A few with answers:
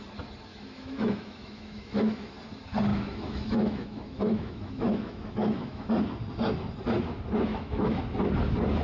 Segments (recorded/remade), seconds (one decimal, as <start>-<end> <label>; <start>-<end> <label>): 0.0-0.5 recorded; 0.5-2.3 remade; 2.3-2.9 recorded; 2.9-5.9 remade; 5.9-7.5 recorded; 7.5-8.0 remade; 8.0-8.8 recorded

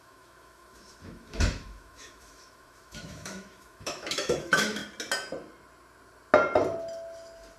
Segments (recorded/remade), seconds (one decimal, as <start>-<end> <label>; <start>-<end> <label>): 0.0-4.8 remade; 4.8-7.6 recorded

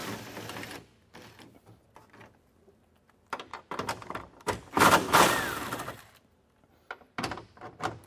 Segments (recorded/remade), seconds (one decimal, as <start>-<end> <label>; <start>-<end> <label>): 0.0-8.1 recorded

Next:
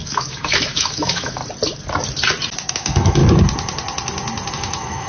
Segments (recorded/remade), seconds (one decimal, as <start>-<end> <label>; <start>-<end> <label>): 0.0-1.4 remade; 1.4-2.7 recorded; 2.7-3.2 remade; 3.2-4.5 recorded; 4.5-5.1 remade

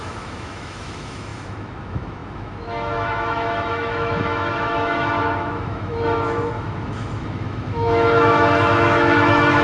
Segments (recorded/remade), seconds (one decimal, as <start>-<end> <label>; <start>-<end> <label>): 0.0-9.6 remade

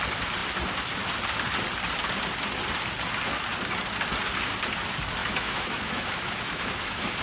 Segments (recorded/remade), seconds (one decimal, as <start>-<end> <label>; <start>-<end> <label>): 0.0-5.2 recorded; 5.2-7.2 remade

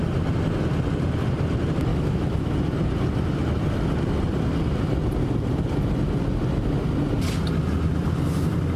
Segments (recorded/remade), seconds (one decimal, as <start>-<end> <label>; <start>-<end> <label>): 0.0-1.9 recorded; 1.9-2.5 remade; 2.5-8.8 recorded